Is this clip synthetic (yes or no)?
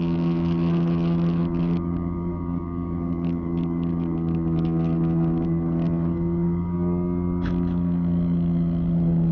yes